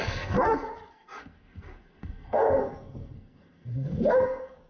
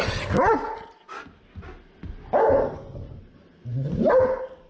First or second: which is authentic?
second